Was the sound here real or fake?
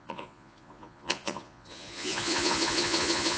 fake